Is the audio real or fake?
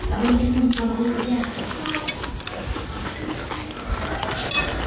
real